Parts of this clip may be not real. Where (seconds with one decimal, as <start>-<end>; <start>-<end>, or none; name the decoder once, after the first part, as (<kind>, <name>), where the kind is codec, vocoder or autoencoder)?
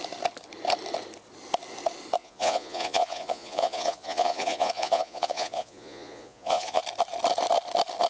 2.2-6.8 (vocoder, Vocos)